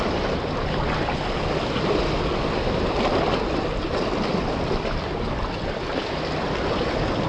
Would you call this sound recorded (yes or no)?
yes